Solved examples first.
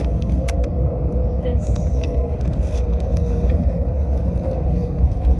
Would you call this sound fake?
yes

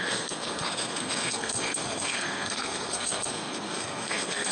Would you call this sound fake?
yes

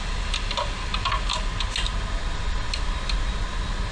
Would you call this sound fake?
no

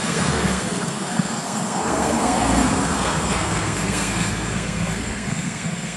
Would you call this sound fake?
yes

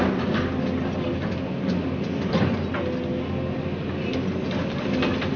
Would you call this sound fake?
no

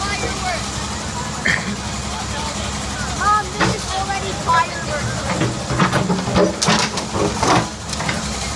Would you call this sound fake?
no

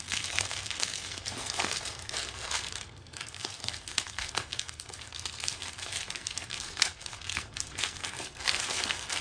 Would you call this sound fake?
yes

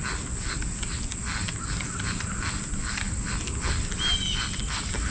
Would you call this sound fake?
no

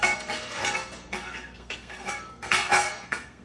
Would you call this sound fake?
yes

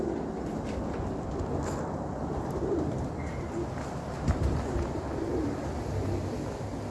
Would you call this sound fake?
no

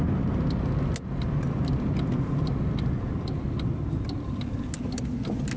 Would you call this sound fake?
no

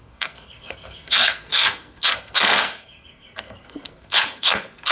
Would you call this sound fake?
yes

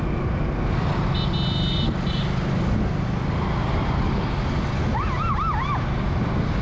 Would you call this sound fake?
no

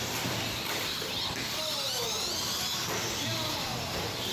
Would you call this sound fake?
no